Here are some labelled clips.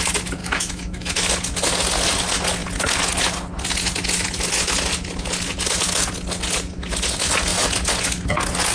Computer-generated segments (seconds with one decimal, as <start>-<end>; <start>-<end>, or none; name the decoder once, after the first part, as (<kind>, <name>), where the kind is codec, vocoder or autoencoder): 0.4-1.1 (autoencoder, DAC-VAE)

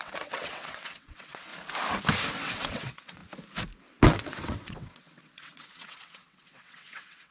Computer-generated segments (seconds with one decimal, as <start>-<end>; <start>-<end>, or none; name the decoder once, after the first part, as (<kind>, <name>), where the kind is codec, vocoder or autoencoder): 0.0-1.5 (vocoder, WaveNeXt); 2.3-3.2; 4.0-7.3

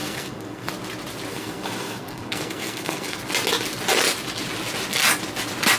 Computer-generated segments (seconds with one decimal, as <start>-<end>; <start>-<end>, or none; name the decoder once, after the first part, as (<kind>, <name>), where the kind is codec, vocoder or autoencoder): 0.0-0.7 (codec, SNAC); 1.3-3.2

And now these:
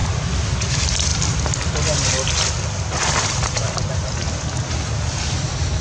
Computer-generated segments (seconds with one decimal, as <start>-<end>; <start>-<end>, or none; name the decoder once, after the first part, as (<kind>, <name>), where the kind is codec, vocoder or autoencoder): none

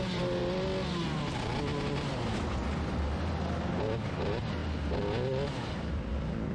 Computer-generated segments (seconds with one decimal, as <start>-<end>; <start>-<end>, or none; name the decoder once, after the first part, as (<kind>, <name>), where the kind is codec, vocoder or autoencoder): none

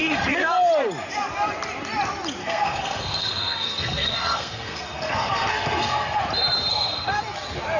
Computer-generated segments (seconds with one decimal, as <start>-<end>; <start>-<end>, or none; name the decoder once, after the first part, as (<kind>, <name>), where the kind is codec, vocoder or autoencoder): 0.0-0.7 (codec, SNAC); 2.4-6.2; 6.7-7.2

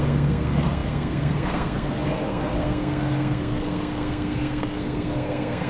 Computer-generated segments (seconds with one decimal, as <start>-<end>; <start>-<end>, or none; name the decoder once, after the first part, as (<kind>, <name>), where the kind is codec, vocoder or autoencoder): 0.0-5.7 (codec, SNAC)